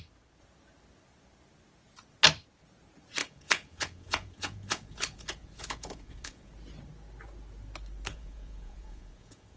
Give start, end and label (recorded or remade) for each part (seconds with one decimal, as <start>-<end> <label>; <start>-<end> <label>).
0.0-3.2 recorded; 3.2-6.5 remade; 6.5-8.1 recorded; 8.1-9.6 remade